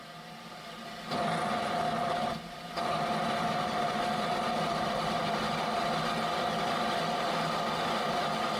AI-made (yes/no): no